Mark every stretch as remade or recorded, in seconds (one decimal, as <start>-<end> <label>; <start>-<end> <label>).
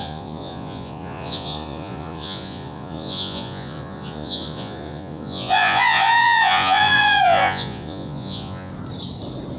0.0-8.7 remade; 8.7-9.6 recorded